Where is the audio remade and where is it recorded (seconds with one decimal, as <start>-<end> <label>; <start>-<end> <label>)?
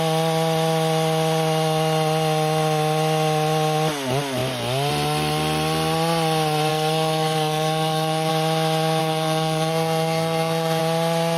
0.0-6.7 recorded; 6.7-8.3 remade; 8.3-9.0 recorded; 9.0-10.8 remade; 10.8-11.4 recorded